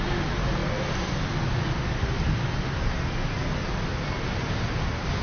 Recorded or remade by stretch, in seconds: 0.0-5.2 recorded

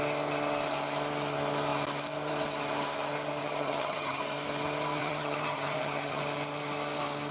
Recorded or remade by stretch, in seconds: 0.0-3.4 recorded; 3.4-4.2 remade; 4.2-5.0 recorded; 5.0-6.2 remade; 6.2-7.3 recorded

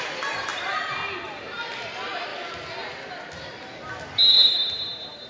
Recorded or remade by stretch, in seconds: 0.0-5.3 recorded

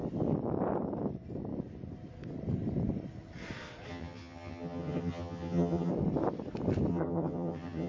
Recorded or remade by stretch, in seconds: 0.0-3.9 recorded; 3.9-5.9 remade; 5.9-6.9 recorded; 6.9-7.9 remade

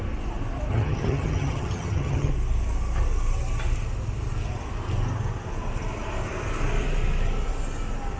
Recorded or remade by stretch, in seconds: 0.0-0.7 recorded; 0.7-2.3 remade; 2.3-8.2 recorded

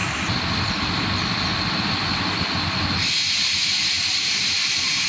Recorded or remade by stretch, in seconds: 0.0-5.1 recorded

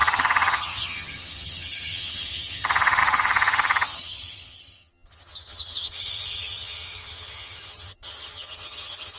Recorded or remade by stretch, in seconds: 0.0-9.2 remade